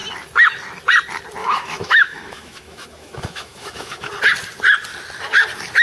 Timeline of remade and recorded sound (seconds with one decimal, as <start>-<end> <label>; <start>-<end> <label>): 0.0-1.4 recorded; 1.4-4.1 remade; 4.1-5.8 recorded